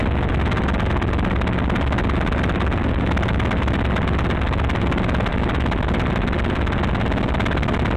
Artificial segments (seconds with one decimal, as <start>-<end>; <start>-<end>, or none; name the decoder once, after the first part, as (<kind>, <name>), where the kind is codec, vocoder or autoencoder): none